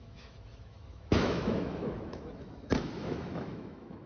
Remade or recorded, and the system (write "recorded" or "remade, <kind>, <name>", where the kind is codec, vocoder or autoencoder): remade, autoencoder, DAC-VAE